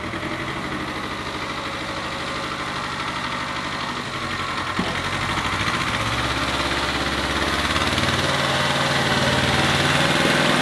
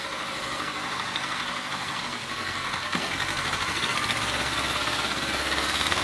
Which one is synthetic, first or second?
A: second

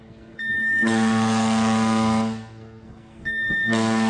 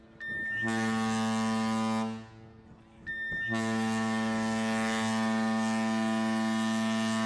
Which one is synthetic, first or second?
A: first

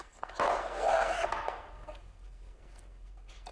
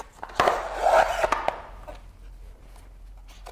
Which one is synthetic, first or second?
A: first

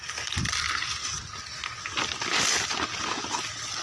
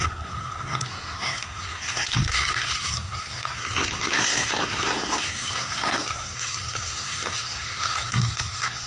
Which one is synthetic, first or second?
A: second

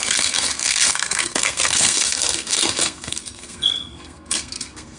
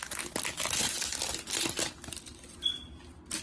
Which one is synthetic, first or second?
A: first